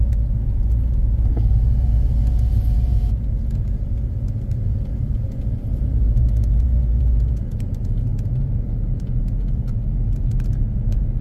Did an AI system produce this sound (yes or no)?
yes